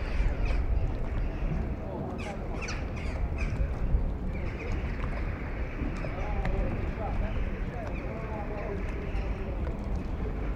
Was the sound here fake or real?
real